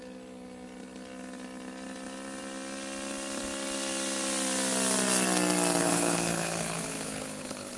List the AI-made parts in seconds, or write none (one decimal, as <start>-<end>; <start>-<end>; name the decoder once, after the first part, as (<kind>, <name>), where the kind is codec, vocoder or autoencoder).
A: 5.8-7.8 (codec, HILCodec)